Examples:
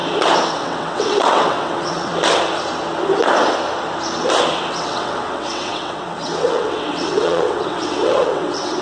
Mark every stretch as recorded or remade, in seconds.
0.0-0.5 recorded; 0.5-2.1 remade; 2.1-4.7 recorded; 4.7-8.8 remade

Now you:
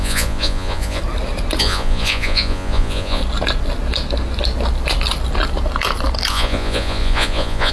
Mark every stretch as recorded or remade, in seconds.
0.0-1.0 remade; 1.0-1.6 recorded; 1.6-3.2 remade; 3.2-6.3 recorded; 6.3-7.7 remade

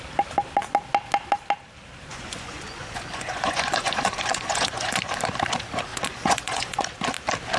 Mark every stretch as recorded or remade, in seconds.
0.0-2.1 recorded; 2.1-5.0 remade; 5.0-5.9 recorded; 5.9-6.8 remade; 6.8-7.6 recorded

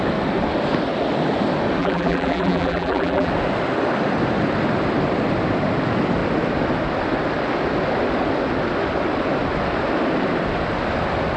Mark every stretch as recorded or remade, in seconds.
0.0-1.8 recorded; 1.8-3.3 remade; 3.3-11.4 recorded

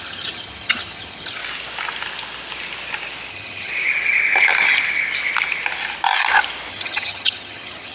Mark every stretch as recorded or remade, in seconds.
0.0-1.4 remade; 1.4-3.3 recorded; 3.3-3.7 remade; 3.7-6.7 recorded; 6.7-7.9 remade

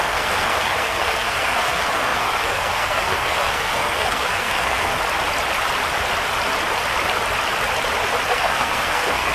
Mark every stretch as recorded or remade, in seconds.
0.0-4.9 remade; 4.9-8.3 recorded; 8.3-9.3 remade

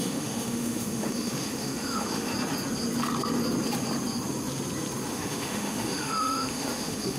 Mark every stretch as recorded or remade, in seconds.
0.0-2.3 remade; 2.3-5.1 recorded; 5.1-7.2 remade

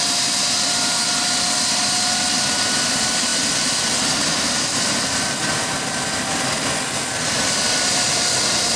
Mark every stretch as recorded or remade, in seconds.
0.0-8.8 recorded